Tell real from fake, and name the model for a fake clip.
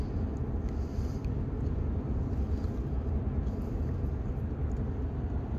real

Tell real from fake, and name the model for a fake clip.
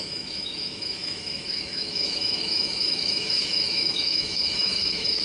fake, autoencoder, DAC-VAE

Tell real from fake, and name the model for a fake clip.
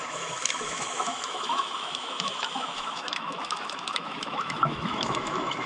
fake, autoencoder, DAC-VAE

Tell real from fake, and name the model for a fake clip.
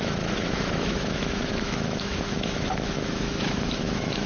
fake, autoencoder, DAC-VAE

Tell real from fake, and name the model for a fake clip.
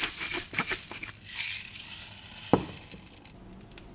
real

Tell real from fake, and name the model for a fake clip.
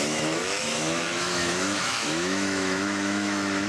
fake, autoencoder, DAC-VAE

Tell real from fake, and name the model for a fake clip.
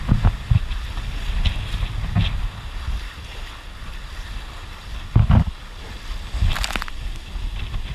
real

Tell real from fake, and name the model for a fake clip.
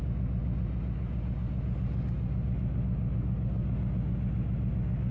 real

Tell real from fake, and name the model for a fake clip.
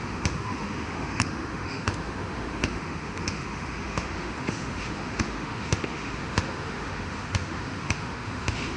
fake, autoencoder, DAC-VAE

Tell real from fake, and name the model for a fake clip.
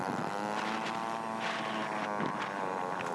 real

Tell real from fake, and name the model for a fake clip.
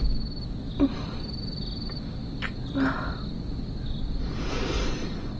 real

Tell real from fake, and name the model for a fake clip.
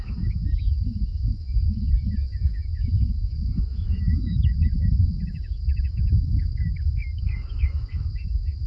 fake, autoencoder, DAC-VAE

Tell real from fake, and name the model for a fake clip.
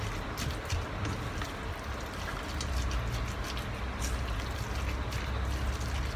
real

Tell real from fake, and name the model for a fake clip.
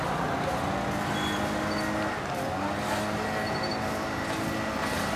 real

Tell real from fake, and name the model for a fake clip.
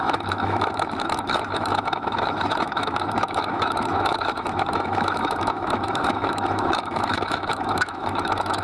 fake, autoencoder, DAC-VAE